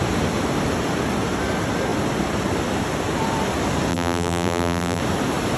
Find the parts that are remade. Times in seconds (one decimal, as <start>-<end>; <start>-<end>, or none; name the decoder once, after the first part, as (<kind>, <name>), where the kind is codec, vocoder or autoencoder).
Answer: 3.9-5.0 (vocoder, BigVGAN v2)